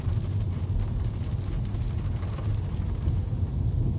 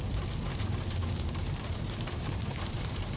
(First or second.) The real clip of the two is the first